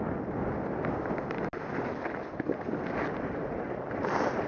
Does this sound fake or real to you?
real